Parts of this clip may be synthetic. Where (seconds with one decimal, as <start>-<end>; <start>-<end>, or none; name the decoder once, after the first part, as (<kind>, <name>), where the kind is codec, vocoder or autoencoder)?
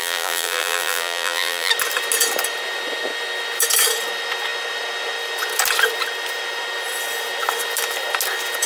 0.0-1.7 (vocoder, BigVGAN v2)